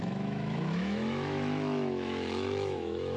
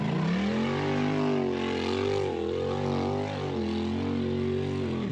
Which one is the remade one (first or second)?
first